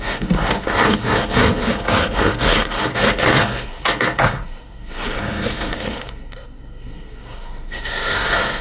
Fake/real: fake